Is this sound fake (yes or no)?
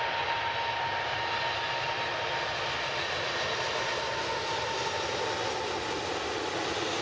no